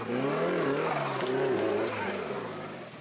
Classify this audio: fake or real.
real